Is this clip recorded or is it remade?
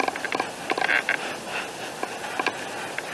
recorded